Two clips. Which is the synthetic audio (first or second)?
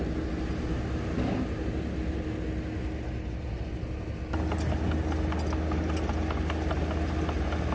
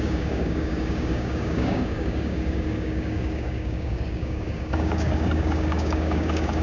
second